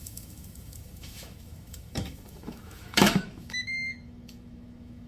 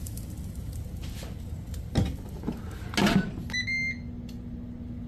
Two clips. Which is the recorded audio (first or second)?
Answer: second